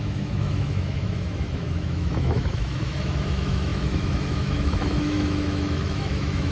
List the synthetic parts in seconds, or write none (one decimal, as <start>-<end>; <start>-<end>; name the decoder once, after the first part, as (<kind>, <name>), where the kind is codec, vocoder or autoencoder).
0.0-6.5 (autoencoder, DAC-VAE)